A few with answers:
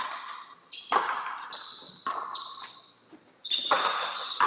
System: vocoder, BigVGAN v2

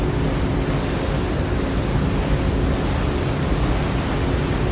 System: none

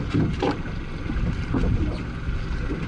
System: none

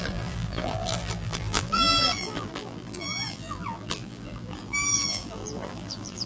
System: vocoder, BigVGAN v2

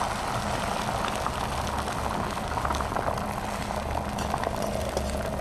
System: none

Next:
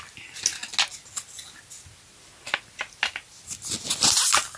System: none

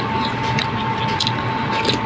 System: none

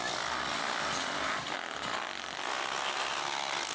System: none